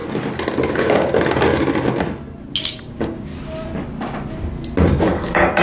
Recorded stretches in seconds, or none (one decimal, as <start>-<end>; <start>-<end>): 0.0-0.7; 1.1-2.6; 3.3-5.0